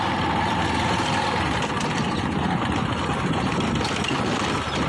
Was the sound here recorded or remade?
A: recorded